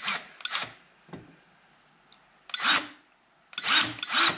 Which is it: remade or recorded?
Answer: recorded